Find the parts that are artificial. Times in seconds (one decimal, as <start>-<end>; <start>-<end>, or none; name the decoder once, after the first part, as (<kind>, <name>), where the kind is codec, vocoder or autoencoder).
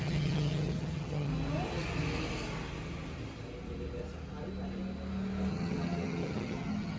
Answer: 0.0-1.3 (vocoder, HiFi-GAN); 5.5-7.0